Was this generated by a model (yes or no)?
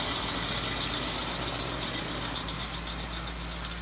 no